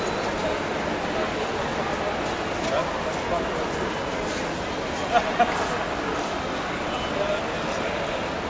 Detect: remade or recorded recorded